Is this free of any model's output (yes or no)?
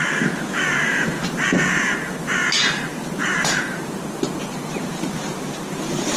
no